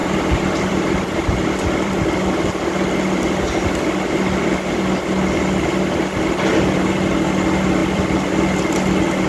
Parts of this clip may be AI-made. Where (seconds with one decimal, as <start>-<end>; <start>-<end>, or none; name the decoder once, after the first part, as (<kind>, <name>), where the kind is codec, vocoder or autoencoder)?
0.0-2.5 (vocoder, BigVGAN v2); 7.8-8.3